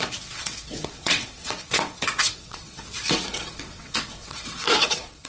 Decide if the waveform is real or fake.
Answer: fake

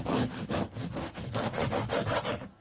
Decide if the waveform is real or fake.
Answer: real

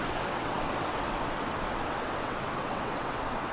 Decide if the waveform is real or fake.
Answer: fake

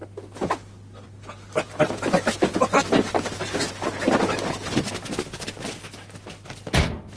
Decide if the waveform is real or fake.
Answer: real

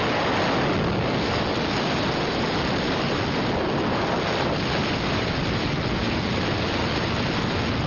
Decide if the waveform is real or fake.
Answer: real